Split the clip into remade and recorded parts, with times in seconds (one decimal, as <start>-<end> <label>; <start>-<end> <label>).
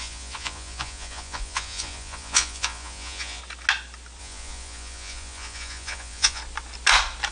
0.0-3.4 remade; 3.4-4.2 recorded; 4.2-6.4 remade; 6.4-7.3 recorded